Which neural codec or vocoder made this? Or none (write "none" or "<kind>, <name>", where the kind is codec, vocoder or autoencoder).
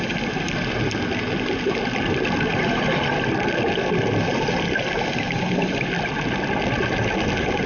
none